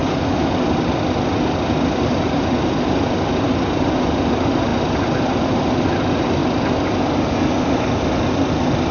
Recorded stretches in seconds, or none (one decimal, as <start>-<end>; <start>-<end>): 0.0-8.9